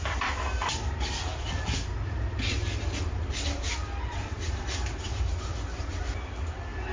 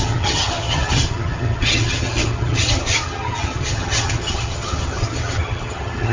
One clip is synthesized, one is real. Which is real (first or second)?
first